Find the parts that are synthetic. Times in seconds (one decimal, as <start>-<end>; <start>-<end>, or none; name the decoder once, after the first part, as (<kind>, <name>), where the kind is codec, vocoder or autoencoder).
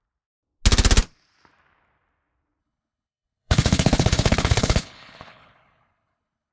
2.6-6.5 (codec, HILCodec)